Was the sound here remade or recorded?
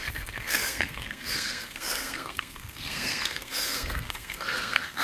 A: remade